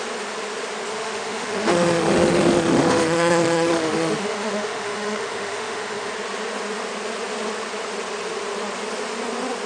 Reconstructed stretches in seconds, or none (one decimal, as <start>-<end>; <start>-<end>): 0.9-6.1